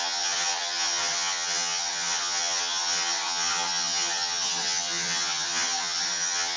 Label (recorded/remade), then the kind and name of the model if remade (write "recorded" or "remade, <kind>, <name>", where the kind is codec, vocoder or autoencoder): remade, vocoder, HiFi-GAN